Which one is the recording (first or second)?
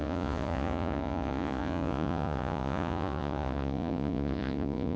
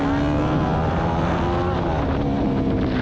second